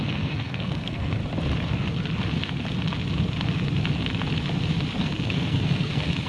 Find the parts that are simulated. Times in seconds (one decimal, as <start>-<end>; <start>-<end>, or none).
0.0-1.2; 5.0-6.3